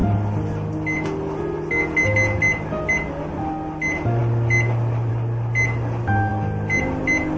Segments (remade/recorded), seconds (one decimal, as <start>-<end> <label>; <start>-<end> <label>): 0.0-7.4 recorded